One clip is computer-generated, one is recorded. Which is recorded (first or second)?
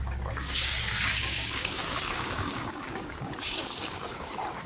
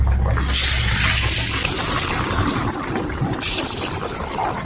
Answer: second